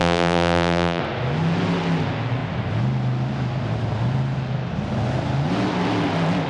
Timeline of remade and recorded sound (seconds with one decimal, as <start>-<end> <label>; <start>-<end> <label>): 0.0-1.0 remade; 1.0-6.5 recorded